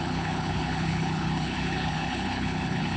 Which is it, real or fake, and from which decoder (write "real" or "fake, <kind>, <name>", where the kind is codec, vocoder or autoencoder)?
fake, codec, HILCodec